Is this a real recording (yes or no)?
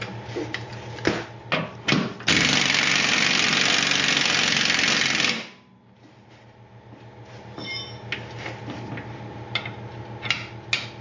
yes